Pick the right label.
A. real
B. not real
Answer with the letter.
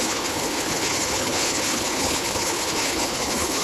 B